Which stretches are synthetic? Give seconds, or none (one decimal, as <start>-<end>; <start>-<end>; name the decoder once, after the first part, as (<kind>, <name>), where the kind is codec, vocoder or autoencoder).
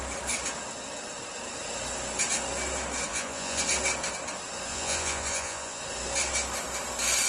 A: 3.1-3.6 (vocoder, Vocos); 4.7-5.8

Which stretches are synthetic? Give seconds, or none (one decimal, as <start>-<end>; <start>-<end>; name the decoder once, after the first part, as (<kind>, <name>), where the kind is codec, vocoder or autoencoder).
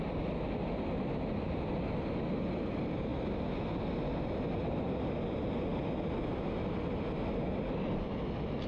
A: none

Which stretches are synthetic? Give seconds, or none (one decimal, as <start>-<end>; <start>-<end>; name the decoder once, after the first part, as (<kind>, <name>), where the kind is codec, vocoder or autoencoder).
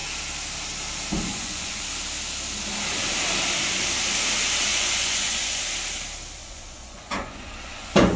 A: 1.3-1.8 (vocoder, Vocos); 4.7-5.6; 6.4-8.2